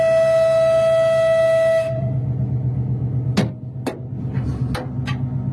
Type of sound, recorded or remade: recorded